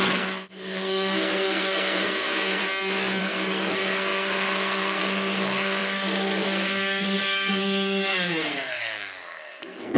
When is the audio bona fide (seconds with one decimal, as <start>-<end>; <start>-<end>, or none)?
2.6-3.2

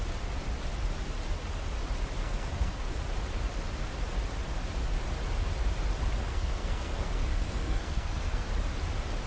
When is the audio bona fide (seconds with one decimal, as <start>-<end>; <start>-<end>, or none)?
0.0-2.2; 2.9-6.3; 8.5-9.3

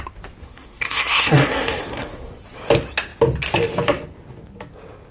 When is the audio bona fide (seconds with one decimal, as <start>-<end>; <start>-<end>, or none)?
0.0-0.4; 2.3-5.1

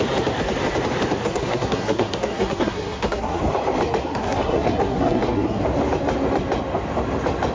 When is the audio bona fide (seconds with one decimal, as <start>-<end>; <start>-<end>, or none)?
0.0-1.3; 3.4-4.0; 5.6-7.5

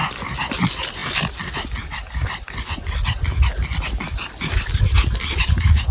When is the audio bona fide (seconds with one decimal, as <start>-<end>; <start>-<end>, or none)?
0.0-5.9